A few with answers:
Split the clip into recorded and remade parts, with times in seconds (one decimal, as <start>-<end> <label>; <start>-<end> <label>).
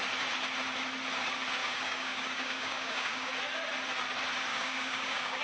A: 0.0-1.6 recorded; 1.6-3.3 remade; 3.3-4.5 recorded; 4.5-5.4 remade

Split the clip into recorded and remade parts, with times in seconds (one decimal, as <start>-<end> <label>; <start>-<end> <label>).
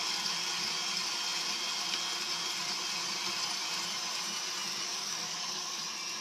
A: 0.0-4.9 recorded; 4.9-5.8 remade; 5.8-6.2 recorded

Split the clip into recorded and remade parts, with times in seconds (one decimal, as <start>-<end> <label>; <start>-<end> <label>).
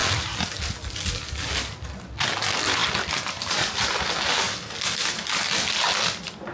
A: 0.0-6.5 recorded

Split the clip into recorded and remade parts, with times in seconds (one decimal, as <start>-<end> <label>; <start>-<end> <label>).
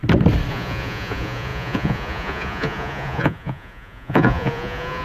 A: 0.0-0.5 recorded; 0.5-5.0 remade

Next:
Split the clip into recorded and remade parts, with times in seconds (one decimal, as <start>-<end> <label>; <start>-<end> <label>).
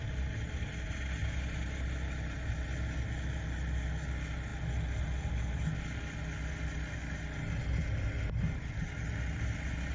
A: 0.0-9.9 recorded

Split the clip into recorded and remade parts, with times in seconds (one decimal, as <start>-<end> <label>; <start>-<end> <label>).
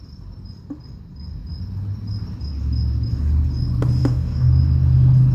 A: 0.0-4.0 recorded; 4.0-4.5 remade; 4.5-5.3 recorded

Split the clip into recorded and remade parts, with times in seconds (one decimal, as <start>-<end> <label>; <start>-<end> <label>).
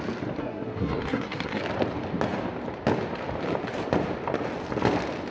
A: 0.0-0.4 recorded; 0.4-1.6 remade; 1.6-5.3 recorded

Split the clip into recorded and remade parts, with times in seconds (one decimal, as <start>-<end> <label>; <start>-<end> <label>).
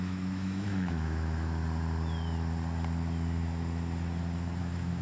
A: 0.0-1.6 remade; 1.6-4.6 recorded; 4.6-5.0 remade